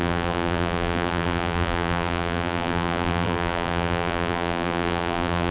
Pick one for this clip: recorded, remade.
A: remade